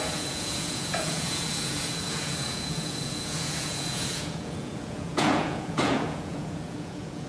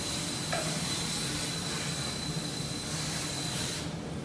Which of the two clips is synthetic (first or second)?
first